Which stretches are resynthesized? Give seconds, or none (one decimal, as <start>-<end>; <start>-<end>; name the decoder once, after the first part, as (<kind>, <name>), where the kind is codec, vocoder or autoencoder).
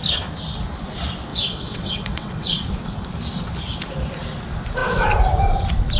1.3-2.7 (vocoder, WaveNeXt)